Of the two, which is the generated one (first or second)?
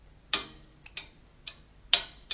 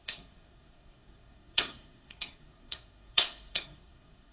second